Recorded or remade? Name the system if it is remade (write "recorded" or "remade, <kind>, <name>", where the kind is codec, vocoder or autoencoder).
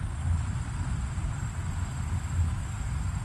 recorded